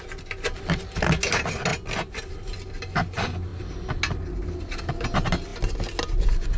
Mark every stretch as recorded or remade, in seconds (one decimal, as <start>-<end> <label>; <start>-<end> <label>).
0.0-1.7 recorded; 1.7-2.3 remade; 2.3-6.6 recorded